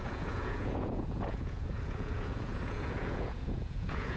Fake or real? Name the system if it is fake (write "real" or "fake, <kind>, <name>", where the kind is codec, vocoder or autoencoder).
fake, vocoder, Vocos